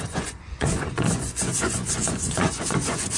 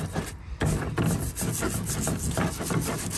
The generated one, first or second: first